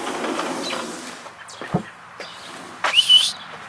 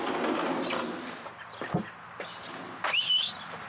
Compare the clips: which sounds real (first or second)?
second